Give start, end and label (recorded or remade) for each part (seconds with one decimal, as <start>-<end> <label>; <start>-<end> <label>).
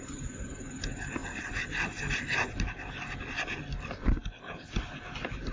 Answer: 0.0-5.5 recorded